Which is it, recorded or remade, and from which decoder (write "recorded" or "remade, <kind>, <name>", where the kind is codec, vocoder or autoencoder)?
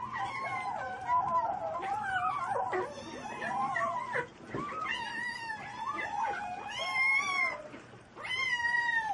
recorded